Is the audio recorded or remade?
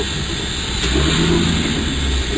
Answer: recorded